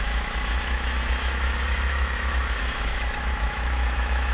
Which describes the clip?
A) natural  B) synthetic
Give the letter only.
B